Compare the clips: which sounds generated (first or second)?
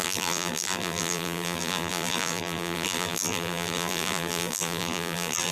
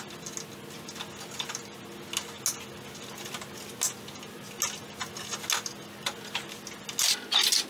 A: first